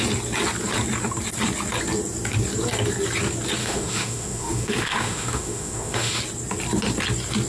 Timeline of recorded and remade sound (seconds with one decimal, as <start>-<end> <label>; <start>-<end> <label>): 0.0-3.6 recorded; 3.6-6.2 remade; 6.2-7.5 recorded

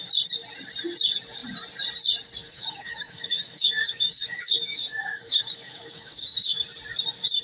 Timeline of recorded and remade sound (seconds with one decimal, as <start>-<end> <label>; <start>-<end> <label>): 0.0-2.4 recorded; 2.4-6.6 remade; 6.6-7.4 recorded

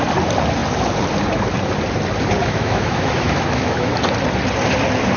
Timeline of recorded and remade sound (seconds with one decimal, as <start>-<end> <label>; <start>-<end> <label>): 0.0-2.4 recorded; 2.4-3.9 remade; 3.9-5.2 recorded

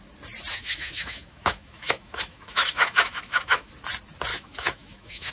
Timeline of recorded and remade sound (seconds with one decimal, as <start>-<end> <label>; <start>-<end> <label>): 0.0-0.5 recorded; 0.5-3.7 remade; 3.7-4.3 recorded; 4.3-5.3 remade

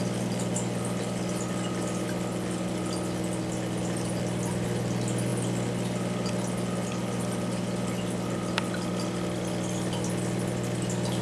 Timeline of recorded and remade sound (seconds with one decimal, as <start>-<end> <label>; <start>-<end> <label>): 0.0-11.2 recorded